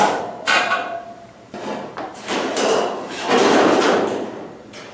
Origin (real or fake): fake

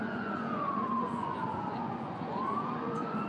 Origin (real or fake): fake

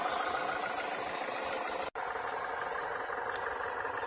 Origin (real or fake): real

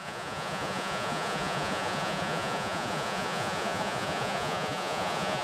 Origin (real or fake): fake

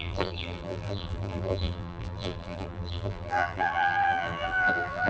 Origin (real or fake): fake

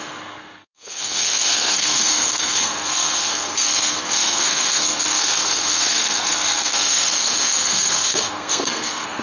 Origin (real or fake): fake